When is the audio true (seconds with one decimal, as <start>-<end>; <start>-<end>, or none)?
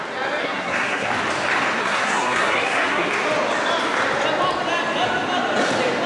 0.0-0.4; 1.1-1.8; 3.1-6.1